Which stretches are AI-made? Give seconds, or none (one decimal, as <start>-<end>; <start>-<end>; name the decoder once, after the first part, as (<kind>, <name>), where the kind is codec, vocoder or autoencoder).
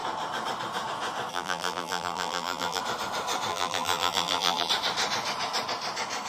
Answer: 1.3-2.8 (vocoder, BigVGAN v2); 3.5-4.7